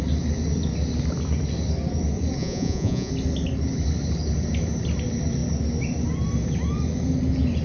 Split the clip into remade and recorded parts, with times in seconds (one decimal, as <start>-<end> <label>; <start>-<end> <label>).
0.0-2.4 recorded; 2.4-3.1 remade; 3.1-7.6 recorded